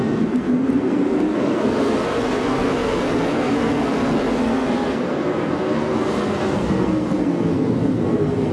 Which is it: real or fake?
fake